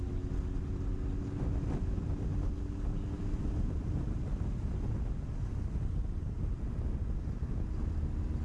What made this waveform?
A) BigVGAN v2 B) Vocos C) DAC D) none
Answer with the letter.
D